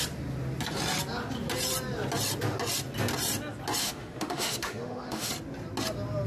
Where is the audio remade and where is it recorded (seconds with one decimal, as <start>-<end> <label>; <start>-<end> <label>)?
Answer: 0.0-3.8 recorded; 3.8-5.3 remade; 5.3-6.3 recorded